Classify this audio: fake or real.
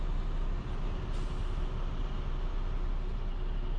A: real